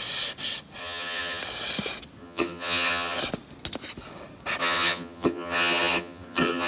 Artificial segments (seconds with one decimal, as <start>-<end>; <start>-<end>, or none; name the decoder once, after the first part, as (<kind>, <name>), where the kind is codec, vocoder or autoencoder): 0.8-1.4 (vocoder, HiFi-GAN); 2.2-3.2; 4.6-6.7